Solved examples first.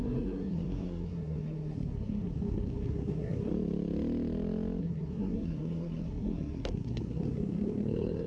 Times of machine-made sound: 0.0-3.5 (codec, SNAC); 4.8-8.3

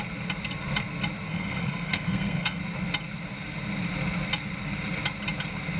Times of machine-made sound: 1.3-2.6 (codec, SNAC)

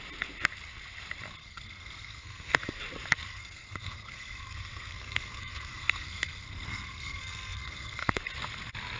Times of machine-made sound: 1.4-2.8 (codec, SNAC); 3.3-8.2

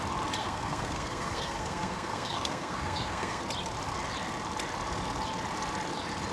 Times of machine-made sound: 0.4-3.4 (codec, SNAC)

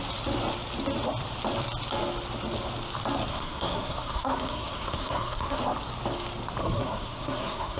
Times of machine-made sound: 3.3-5.6 (codec, SNAC); 6.6-7.8

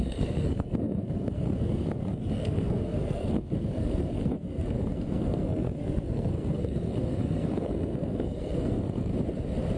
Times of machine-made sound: 0.0-9.1 (codec, SNAC)

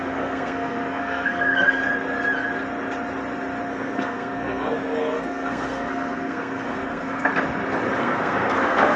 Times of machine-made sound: 0.0-1.8 (codec, SNAC); 3.7-7.3; 8.0-9.0

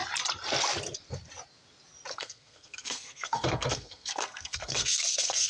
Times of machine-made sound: 2.1-5.5 (codec, SNAC)